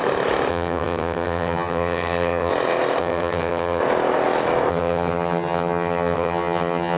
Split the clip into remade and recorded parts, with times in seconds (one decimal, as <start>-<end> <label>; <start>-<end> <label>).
0.0-0.5 recorded; 0.5-2.5 remade; 2.5-3.0 recorded; 3.0-3.8 remade; 3.8-4.7 recorded; 4.7-7.0 remade